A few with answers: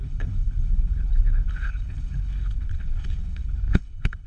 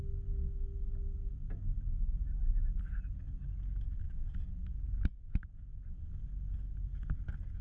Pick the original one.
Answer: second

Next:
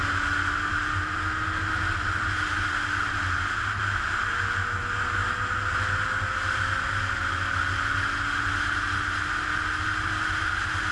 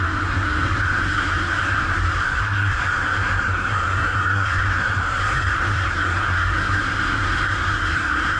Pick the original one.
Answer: first